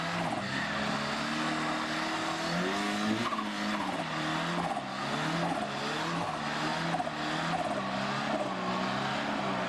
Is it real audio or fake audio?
real